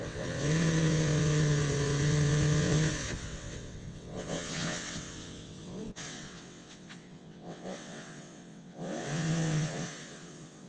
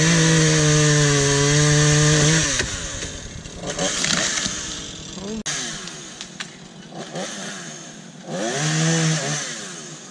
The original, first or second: second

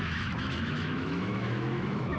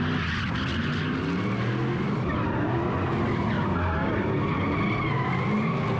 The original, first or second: second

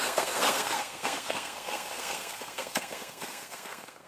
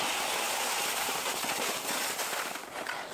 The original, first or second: second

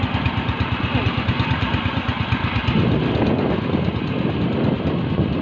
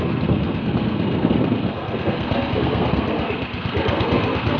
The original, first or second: first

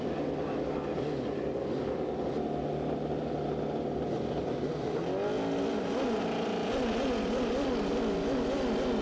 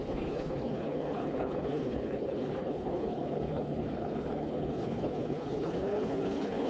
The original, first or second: first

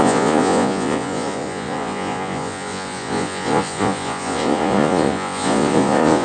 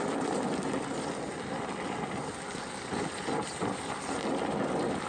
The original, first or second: second